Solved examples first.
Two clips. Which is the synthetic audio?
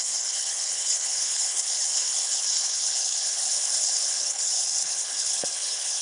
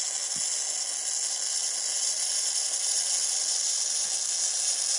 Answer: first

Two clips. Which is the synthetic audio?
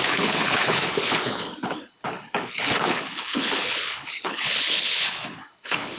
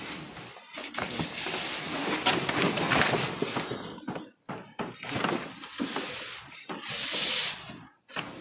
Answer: first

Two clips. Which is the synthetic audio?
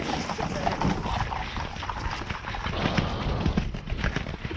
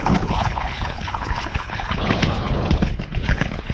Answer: second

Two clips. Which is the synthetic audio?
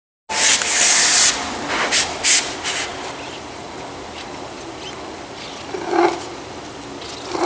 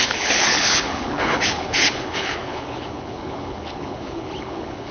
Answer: second